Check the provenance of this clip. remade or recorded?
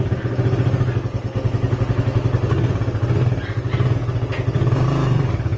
recorded